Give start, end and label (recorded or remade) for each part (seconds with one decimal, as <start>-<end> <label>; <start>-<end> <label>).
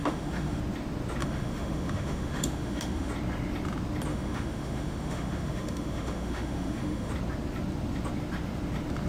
0.0-0.6 remade; 0.6-1.2 recorded; 1.2-3.1 remade; 3.1-4.1 recorded; 4.1-7.1 remade; 7.1-9.1 recorded